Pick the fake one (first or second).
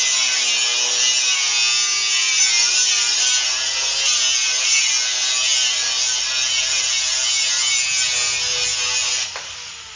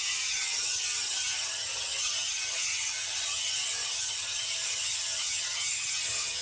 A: second